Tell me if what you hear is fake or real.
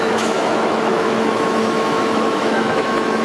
fake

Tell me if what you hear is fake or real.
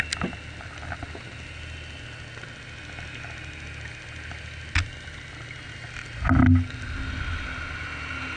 real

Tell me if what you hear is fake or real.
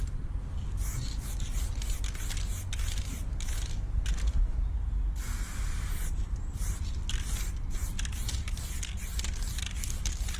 real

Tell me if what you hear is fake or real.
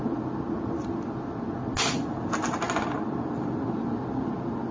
real